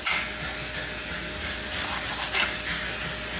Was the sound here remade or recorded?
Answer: recorded